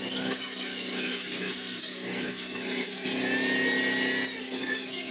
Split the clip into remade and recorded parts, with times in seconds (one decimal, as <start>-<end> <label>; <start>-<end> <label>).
0.0-3.1 remade; 3.1-4.4 recorded; 4.4-5.1 remade